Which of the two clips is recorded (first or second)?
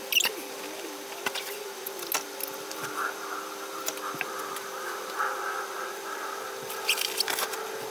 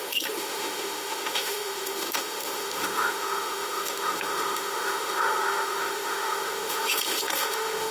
first